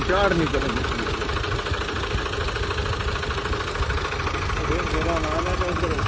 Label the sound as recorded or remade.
recorded